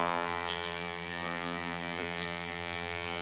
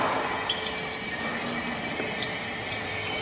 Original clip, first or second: second